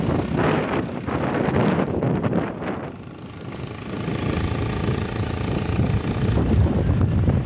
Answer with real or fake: real